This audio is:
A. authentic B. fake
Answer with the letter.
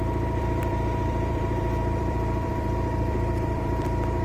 B